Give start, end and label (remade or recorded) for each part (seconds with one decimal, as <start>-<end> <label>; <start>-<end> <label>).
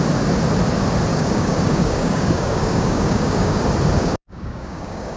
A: 0.0-1.1 recorded; 1.1-3.6 remade; 3.6-4.0 recorded; 4.0-5.2 remade